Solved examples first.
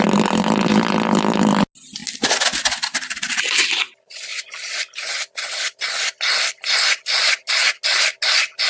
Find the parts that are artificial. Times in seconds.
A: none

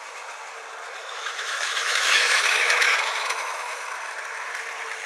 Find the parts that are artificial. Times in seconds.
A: 1.0-3.8 (autoencoder, DAC-VAE)

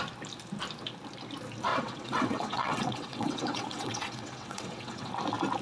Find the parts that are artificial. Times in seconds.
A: 1.7-5.1 (vocoder, WaveNeXt)

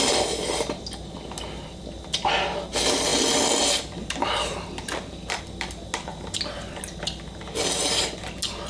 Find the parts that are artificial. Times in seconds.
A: none

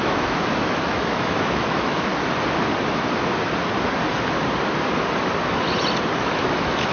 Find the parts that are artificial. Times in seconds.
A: 0.0-2.1 (autoencoder, DAC-VAE); 6.2-6.9

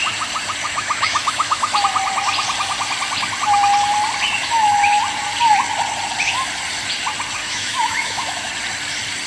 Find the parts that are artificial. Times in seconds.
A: 0.6-1.8 (autoencoder, DAC-VAE); 4.4-5.0; 7.4-8.5